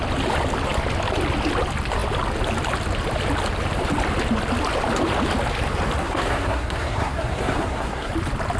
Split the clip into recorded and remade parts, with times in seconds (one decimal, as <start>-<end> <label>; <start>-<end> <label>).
0.0-6.0 recorded; 6.0-8.1 remade; 8.1-8.6 recorded